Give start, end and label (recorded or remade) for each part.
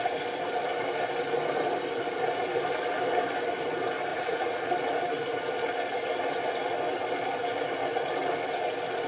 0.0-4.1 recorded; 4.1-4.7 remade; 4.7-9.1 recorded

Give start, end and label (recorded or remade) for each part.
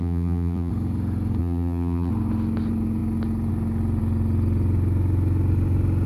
0.0-0.7 remade; 0.7-1.4 recorded; 1.4-2.1 remade; 2.1-6.1 recorded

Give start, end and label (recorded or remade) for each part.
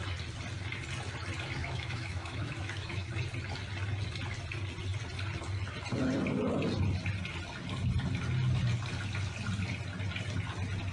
0.0-1.6 recorded; 1.6-3.1 remade; 3.1-10.9 recorded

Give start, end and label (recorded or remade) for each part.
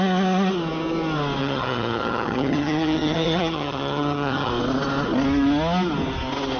0.0-1.4 recorded; 1.4-4.5 remade; 4.5-6.6 recorded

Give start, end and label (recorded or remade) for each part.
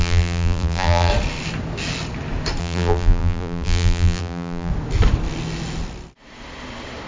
0.0-1.1 remade; 1.1-2.6 recorded; 2.6-4.7 remade; 4.7-7.1 recorded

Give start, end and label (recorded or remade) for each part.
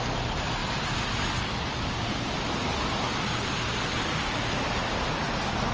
0.0-5.7 recorded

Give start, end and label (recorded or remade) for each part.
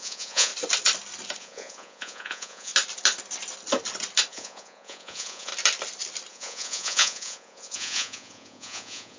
0.0-0.5 remade; 0.5-1.4 recorded; 1.4-2.7 remade; 2.7-4.3 recorded; 4.3-5.5 remade; 5.5-6.3 recorded; 6.3-9.2 remade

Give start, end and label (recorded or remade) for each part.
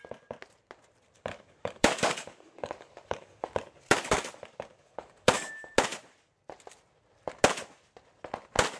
0.0-1.3 recorded; 1.3-5.5 remade; 5.5-8.8 recorded